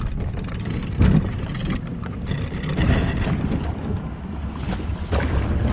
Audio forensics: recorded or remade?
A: recorded